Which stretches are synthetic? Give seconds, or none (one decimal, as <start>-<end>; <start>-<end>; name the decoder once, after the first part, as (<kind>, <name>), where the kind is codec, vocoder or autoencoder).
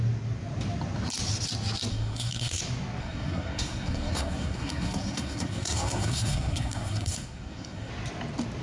1.9-2.6 (codec, SNAC); 3.0-7.9